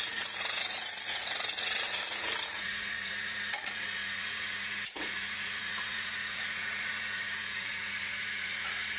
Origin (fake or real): fake